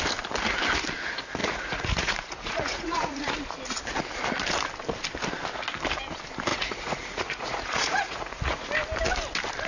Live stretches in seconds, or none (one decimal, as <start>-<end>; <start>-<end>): 0.0-1.4; 3.3-6.5; 8.7-9.7